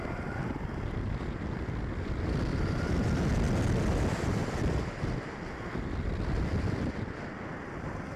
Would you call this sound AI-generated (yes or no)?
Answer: no